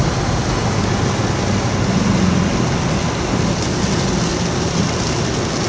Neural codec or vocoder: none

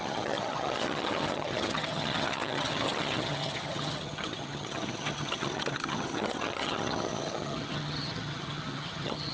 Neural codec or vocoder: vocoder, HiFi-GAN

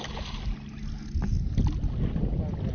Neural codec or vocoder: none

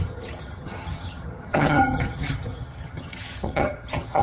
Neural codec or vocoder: vocoder, HiFi-GAN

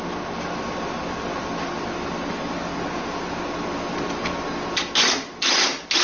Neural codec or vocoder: none